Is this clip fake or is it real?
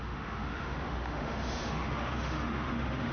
fake